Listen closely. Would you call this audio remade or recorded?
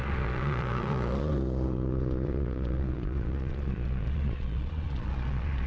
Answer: remade